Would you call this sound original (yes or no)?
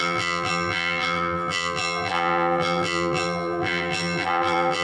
no